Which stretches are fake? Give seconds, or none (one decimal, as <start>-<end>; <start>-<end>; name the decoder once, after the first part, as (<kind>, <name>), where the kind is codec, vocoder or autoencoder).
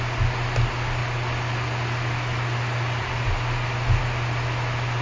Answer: none